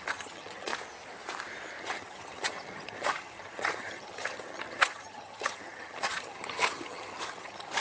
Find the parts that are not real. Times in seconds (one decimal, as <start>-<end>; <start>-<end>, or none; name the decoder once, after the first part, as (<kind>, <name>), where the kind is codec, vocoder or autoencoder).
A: 0.0-0.7 (vocoder, HiFi-GAN); 1.8-7.8